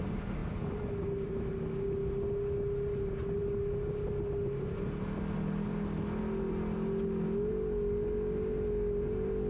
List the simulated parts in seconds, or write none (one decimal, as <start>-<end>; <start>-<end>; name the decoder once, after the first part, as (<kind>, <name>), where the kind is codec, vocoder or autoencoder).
none